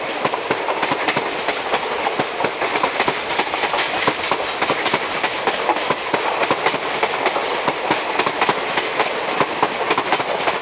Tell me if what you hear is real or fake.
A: real